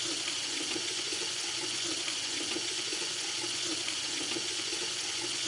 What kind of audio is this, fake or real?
fake